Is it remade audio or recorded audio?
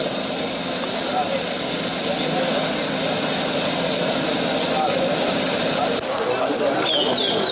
recorded